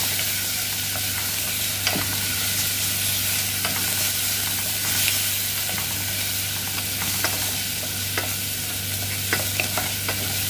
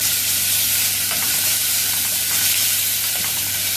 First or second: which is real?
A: first